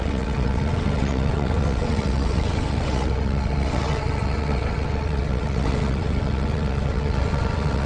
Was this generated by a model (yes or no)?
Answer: yes